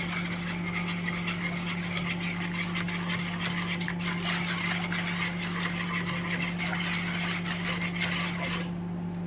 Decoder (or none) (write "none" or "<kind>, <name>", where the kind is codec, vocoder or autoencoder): none